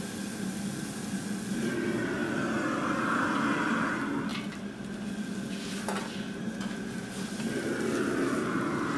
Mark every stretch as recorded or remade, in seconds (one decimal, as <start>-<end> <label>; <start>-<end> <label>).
0.0-9.0 recorded